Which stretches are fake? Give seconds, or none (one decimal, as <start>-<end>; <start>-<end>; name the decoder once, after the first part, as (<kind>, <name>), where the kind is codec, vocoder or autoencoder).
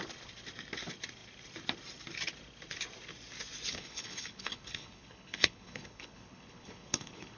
3.7-7.4 (codec, HILCodec)